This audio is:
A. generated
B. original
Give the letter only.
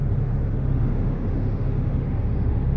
A